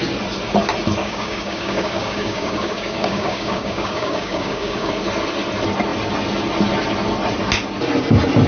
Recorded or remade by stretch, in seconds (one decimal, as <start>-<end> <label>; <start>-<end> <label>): 0.0-1.0 recorded; 1.0-4.9 remade; 4.9-8.5 recorded